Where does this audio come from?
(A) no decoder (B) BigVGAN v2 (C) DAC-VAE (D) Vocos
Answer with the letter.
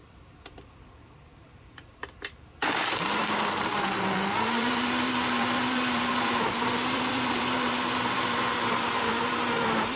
B